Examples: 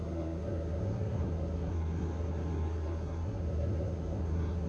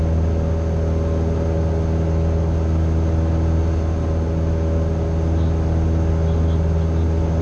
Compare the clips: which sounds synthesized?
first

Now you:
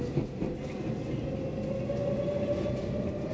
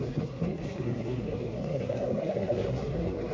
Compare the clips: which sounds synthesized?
second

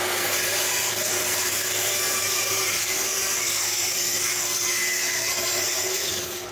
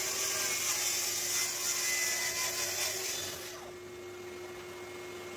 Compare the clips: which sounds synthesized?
first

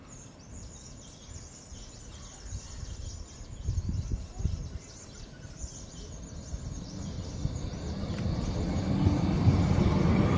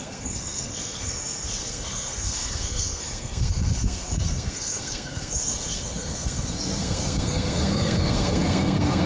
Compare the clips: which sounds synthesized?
second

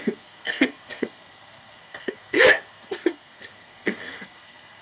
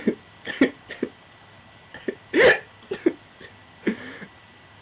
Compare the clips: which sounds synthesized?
first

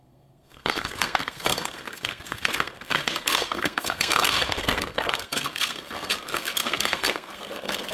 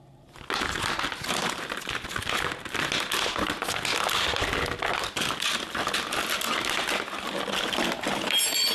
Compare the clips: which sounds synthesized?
first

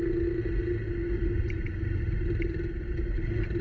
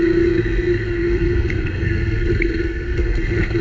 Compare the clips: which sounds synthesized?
second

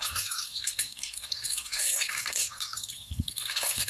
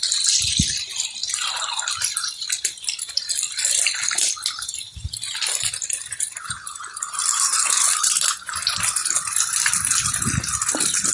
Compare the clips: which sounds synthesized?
first